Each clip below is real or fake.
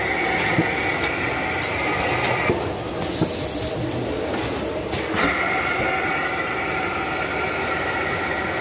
real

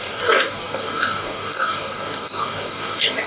fake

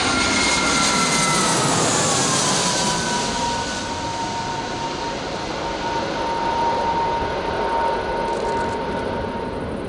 real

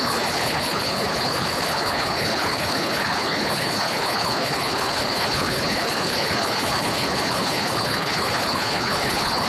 fake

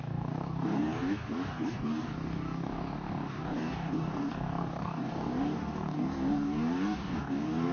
fake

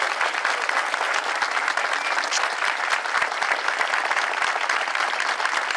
real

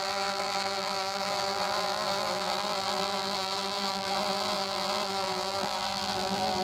fake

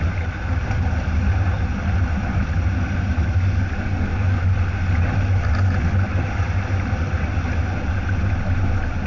real